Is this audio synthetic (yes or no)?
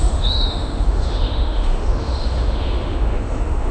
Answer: yes